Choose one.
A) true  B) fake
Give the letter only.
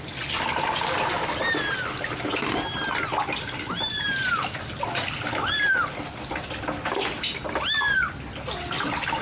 A